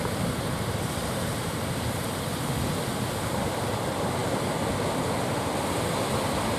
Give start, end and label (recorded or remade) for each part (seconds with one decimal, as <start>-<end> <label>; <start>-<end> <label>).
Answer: 0.0-6.6 recorded